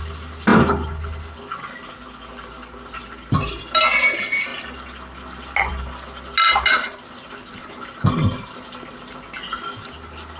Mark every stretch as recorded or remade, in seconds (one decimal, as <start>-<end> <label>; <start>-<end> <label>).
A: 0.0-10.4 recorded